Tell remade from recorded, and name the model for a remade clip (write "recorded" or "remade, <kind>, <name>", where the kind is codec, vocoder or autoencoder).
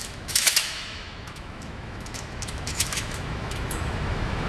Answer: remade, autoencoder, DAC-VAE